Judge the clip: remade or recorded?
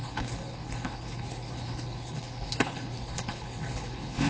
remade